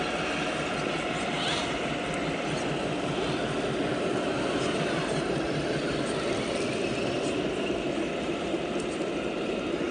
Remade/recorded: recorded